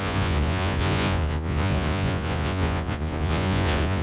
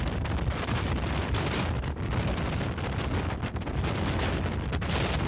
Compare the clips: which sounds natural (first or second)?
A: second